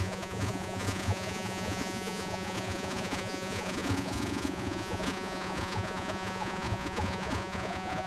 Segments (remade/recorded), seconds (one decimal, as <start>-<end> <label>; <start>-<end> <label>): 0.0-8.1 remade